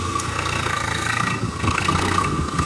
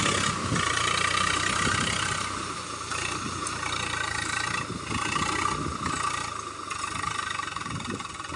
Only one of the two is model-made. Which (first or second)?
first